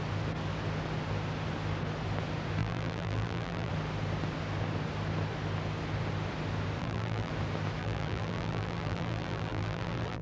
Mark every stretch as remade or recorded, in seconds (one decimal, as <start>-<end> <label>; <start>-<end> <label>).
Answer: 0.0-2.6 recorded; 2.6-3.7 remade; 3.7-6.8 recorded; 6.8-7.3 remade; 7.3-7.8 recorded; 7.8-10.2 remade